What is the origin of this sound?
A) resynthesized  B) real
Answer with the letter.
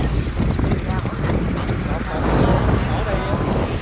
B